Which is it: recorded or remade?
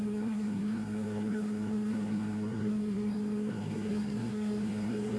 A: remade